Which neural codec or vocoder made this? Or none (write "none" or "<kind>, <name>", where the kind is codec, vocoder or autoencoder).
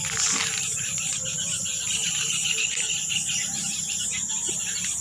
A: none